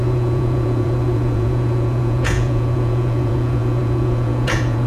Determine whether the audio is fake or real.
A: fake